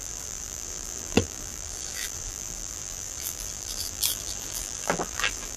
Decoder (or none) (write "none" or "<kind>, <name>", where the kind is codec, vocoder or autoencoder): vocoder, BigVGAN v2